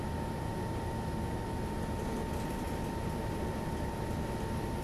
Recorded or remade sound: recorded